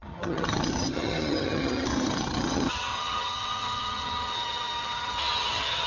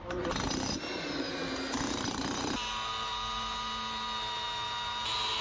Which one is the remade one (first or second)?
first